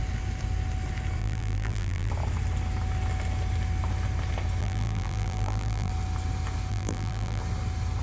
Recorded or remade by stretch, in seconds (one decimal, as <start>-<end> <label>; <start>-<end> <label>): 0.0-1.2 recorded; 1.2-2.1 remade; 2.1-4.6 recorded; 4.6-5.9 remade; 5.9-6.7 recorded; 6.7-7.4 remade; 7.4-8.0 recorded